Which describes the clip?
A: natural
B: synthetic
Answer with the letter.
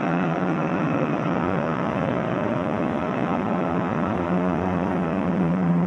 B